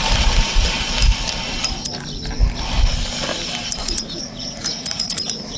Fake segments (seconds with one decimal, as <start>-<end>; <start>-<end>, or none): 3.8-5.6